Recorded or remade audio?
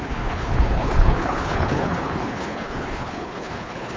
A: remade